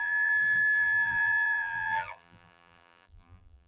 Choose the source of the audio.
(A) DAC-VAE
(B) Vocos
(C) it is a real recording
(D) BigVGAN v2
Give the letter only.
D